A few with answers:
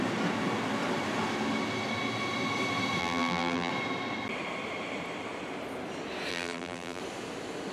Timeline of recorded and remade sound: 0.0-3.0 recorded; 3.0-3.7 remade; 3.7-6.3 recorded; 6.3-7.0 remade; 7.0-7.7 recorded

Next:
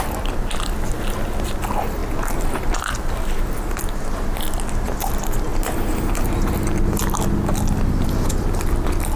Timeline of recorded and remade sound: 0.0-9.2 recorded